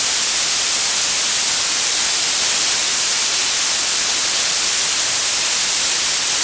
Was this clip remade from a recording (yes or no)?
no